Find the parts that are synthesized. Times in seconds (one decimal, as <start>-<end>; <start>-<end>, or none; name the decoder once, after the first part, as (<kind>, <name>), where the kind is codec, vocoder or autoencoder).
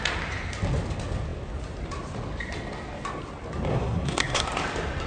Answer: 3.7-4.4 (codec, SNAC)